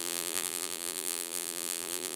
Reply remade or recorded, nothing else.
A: remade